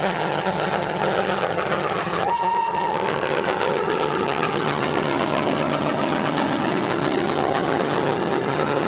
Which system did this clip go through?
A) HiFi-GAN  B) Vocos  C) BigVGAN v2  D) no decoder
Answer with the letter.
A